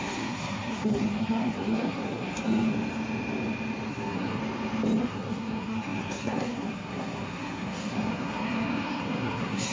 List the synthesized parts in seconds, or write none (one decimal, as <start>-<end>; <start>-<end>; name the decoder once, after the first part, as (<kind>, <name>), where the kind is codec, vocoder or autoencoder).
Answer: 0.0-2.7 (codec, SNAC); 3.9-4.4; 5.0-9.7